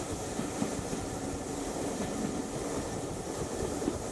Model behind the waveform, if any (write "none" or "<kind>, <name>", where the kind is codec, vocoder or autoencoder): none